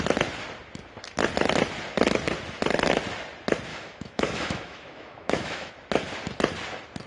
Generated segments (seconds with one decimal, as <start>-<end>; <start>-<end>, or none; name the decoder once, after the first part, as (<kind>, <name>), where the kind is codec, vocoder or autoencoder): 3.7-5.7 (autoencoder, DAC-VAE)